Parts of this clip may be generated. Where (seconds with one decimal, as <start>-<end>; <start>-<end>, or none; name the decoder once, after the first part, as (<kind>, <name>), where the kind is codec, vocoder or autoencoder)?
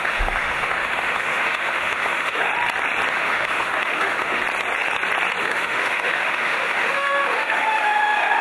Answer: 0.0-2.5 (autoencoder, DAC-VAE); 3.1-4.4; 5.4-8.4